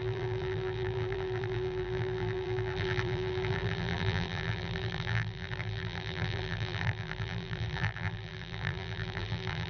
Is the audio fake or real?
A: fake